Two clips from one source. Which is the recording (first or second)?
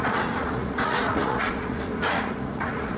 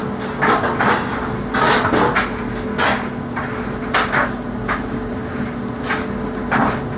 second